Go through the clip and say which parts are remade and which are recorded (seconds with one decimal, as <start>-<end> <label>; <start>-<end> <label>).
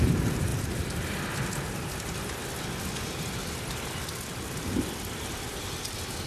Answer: 0.0-0.5 remade; 0.5-1.7 recorded; 1.7-2.4 remade; 2.4-6.3 recorded